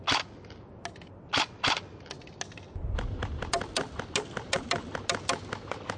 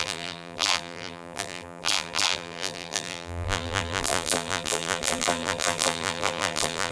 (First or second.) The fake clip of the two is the second